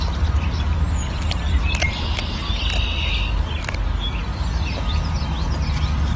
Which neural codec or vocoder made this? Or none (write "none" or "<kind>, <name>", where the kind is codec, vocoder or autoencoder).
none